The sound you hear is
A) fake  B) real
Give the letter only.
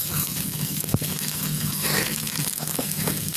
A